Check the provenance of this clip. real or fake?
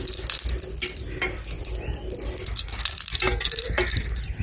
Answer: real